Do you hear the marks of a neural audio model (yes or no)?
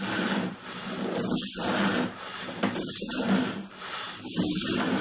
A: yes